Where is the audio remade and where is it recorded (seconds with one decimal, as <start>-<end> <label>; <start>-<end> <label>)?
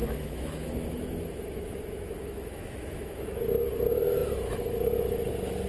0.0-3.4 remade; 3.4-5.7 recorded